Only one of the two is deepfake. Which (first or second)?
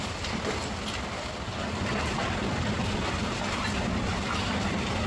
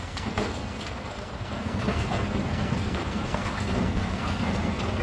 second